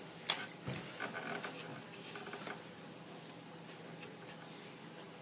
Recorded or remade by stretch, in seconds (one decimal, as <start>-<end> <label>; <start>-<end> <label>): 0.0-5.2 recorded